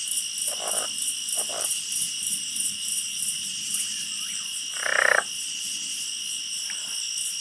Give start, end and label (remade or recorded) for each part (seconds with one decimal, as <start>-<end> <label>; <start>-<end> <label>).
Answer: 0.0-1.5 recorded; 1.5-3.2 remade; 3.2-7.4 recorded

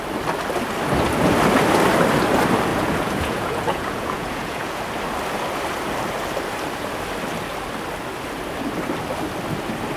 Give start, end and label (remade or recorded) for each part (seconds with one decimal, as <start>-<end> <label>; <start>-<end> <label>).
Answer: 0.0-2.7 recorded; 2.7-4.8 remade; 4.8-10.0 recorded

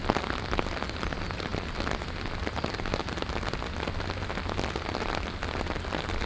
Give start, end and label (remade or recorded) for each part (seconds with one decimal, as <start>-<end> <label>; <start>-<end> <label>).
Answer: 0.0-6.3 recorded

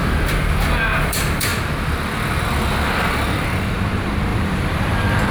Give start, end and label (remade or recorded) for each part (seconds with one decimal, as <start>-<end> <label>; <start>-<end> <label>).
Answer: 0.0-1.0 recorded; 1.0-1.5 remade; 1.5-3.7 recorded; 3.7-5.3 remade